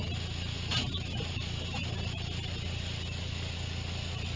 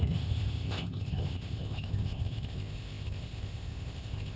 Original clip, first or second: first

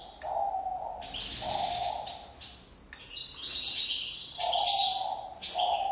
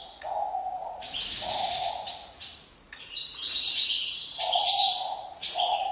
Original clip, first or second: first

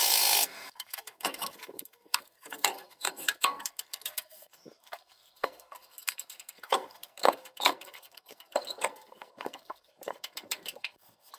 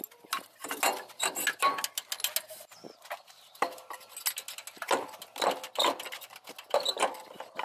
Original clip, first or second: second